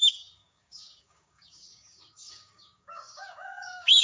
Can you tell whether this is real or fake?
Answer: fake